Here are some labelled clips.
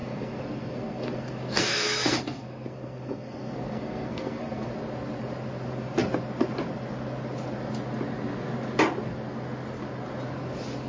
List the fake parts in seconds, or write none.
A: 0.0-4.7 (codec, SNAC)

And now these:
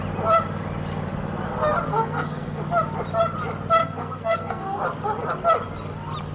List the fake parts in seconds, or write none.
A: 1.9-2.6 (codec, SNAC); 3.8-4.8

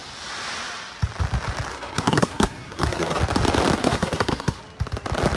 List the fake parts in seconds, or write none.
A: 1.7-3.2 (codec, SNAC); 3.8-4.6

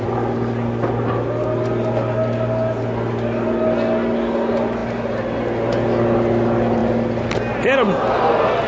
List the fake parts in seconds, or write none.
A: none

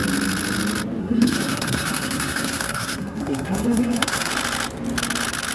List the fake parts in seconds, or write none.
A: 1.0-4.3 (codec, SNAC)

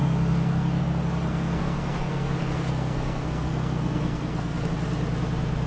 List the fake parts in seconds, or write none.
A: 0.0-0.8 (codec, SNAC); 1.3-4.7